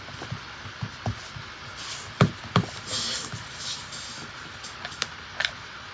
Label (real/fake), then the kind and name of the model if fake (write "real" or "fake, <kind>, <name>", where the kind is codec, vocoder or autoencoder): real